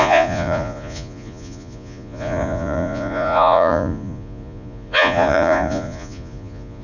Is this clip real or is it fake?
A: fake